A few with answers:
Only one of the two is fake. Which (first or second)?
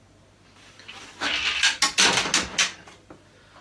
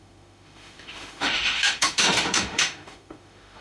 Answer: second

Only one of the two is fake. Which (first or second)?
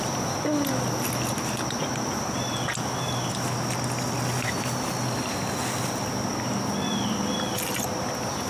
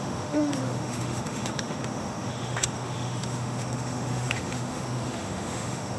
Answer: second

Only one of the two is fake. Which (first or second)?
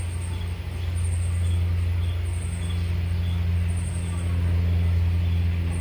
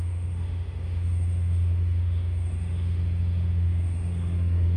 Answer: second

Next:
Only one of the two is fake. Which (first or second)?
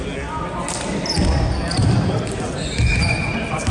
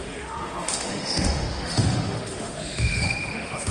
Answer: second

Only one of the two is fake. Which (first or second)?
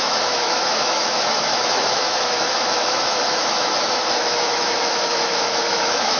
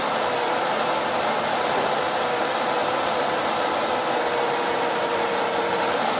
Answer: first